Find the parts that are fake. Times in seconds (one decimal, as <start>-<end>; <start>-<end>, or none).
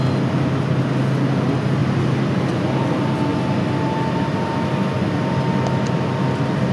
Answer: none